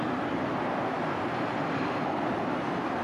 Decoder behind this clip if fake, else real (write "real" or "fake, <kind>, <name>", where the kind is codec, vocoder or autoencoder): real